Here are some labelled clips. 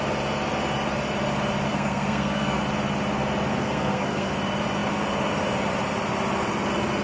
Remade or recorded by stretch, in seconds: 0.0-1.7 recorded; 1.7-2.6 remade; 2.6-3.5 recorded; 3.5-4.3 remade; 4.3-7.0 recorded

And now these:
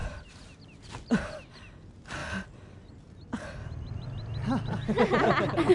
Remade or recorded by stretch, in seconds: 0.0-0.6 remade; 0.6-5.7 recorded

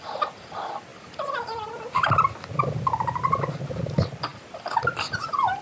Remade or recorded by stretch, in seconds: 0.0-5.6 recorded

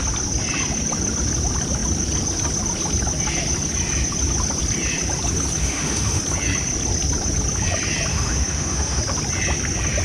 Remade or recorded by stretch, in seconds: 0.0-5.6 recorded; 5.6-6.2 remade; 6.2-8.1 recorded; 8.1-9.0 remade; 9.0-10.0 recorded

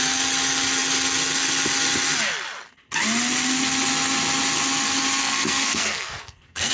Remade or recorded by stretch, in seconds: 0.0-5.2 recorded; 5.2-6.7 remade